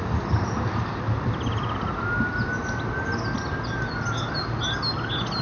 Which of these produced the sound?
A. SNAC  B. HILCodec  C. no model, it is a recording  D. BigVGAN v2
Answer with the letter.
C